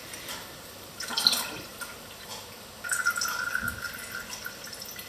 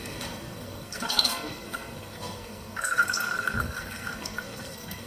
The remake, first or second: second